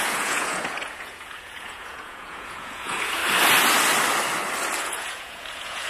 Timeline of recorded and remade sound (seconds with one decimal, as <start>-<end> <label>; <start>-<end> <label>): 0.0-3.2 remade; 3.2-4.8 recorded; 4.8-5.9 remade